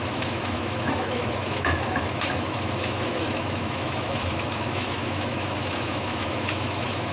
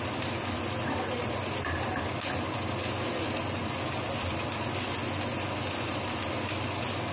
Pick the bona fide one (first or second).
second